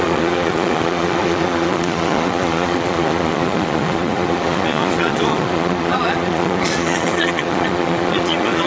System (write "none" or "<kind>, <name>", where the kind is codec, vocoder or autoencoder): vocoder, Vocos